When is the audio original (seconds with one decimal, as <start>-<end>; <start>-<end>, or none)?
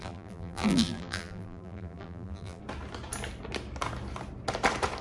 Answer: 2.6-5.0